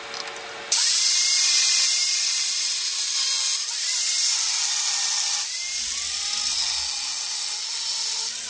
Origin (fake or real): real